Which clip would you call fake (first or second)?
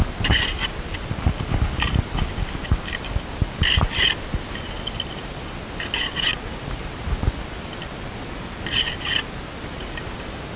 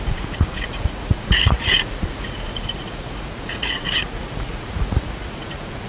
second